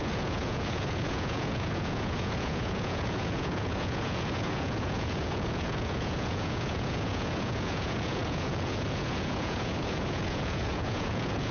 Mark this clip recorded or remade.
remade